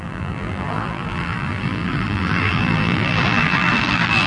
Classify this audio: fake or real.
fake